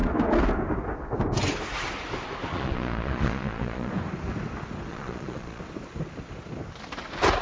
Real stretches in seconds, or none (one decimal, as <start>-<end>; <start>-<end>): 0.0-2.5; 3.9-4.9; 5.6-7.4